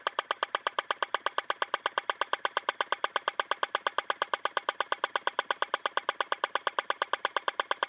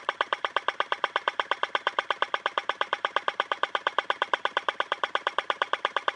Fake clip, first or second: second